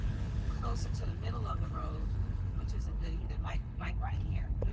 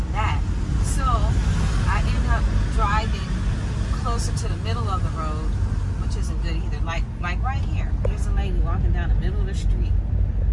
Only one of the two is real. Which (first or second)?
second